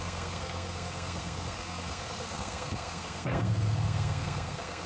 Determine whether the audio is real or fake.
fake